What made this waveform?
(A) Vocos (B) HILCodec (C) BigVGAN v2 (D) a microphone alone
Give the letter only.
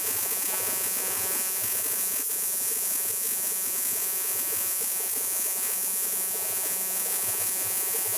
A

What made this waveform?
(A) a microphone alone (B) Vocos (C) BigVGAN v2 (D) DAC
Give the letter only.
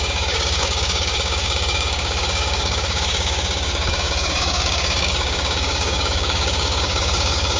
D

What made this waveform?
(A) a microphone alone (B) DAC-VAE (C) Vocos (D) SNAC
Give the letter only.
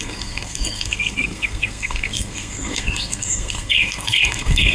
D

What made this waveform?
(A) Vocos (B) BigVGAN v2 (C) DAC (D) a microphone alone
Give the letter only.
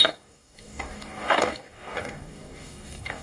C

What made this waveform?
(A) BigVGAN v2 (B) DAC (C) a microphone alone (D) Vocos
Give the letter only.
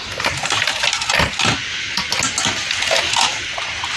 C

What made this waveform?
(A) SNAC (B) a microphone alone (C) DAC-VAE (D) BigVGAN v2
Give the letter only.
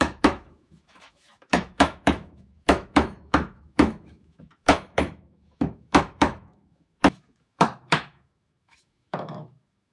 C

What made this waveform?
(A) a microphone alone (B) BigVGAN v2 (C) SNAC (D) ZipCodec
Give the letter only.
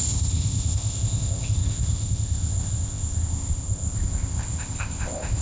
D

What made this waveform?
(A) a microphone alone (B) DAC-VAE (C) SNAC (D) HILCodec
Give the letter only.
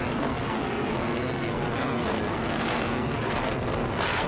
C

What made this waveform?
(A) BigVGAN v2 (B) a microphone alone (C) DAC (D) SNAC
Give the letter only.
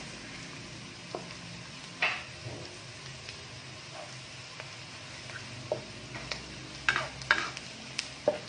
B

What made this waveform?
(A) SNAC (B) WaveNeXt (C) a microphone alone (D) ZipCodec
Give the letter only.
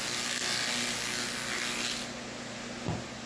C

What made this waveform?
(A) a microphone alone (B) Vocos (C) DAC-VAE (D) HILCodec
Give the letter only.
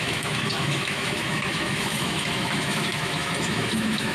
C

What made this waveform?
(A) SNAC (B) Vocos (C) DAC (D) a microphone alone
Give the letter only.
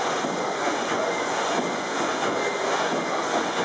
B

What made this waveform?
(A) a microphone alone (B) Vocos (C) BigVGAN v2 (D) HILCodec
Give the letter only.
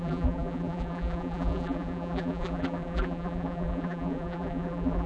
C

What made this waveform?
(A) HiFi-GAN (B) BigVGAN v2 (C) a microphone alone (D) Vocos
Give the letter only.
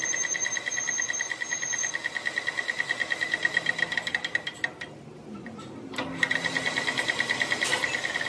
C